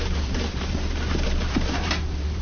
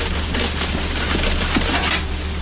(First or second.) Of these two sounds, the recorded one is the second